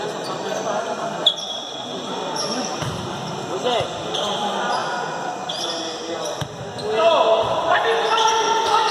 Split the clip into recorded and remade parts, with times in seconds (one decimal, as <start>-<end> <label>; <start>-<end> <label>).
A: 0.0-1.9 recorded; 1.9-2.6 remade; 2.6-8.9 recorded